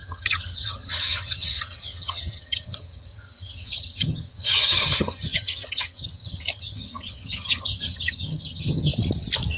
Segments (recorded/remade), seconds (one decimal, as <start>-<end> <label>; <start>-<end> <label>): 0.0-8.9 remade; 8.9-9.6 recorded